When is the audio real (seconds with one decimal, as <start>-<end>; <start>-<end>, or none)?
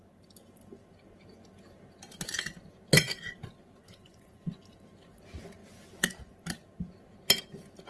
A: 0.0-3.8; 4.5-7.9